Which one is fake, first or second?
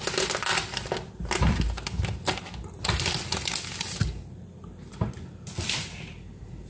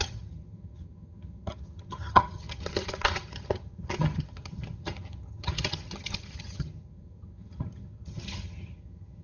second